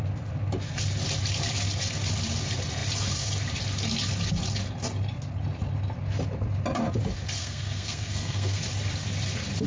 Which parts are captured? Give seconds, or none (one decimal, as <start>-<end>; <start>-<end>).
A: 0.0-7.4; 8.6-9.7